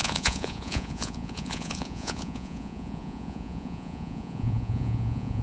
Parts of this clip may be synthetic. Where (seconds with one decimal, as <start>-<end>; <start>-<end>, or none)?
0.0-5.4